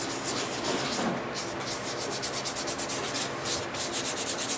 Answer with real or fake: real